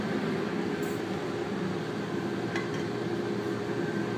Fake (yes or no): no